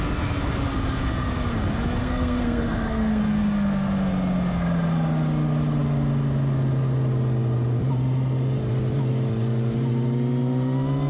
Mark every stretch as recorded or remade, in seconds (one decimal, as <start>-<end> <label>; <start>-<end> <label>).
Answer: 0.0-2.0 recorded; 2.0-3.2 remade; 3.2-11.1 recorded

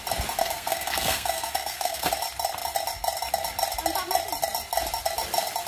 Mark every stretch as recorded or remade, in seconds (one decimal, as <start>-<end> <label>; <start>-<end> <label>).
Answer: 0.0-0.4 recorded; 0.4-2.1 remade; 2.1-5.7 recorded

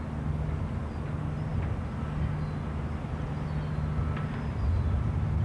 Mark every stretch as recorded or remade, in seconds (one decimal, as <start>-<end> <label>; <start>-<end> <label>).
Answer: 0.0-5.4 recorded

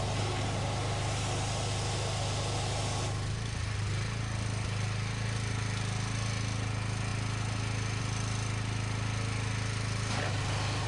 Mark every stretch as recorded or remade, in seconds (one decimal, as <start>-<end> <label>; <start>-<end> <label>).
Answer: 0.0-10.9 recorded

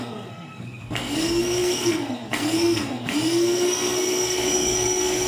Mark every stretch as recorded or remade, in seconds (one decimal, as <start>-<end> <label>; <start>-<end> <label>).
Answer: 0.0-5.3 remade

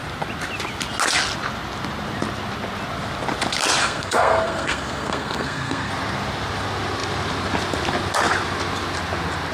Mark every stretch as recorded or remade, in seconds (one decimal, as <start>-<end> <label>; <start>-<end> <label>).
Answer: 0.0-3.8 recorded; 3.8-5.9 remade; 5.9-9.5 recorded

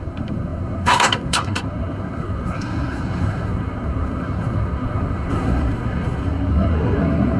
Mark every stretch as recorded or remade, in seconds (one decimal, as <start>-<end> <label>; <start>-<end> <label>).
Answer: 0.0-7.4 remade

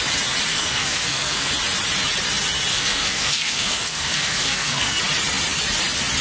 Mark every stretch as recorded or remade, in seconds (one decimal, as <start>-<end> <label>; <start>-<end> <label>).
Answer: 0.0-0.5 recorded; 0.5-1.5 remade; 1.5-2.7 recorded; 2.7-5.0 remade; 5.0-6.2 recorded